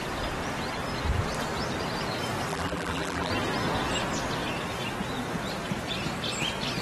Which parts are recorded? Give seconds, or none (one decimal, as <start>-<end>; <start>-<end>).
0.0-2.5; 3.3-6.8